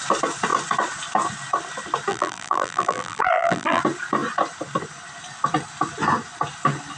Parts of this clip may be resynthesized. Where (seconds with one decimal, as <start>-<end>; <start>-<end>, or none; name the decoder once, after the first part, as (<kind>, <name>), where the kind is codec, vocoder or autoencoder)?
2.1-3.8 (vocoder, BigVGAN v2)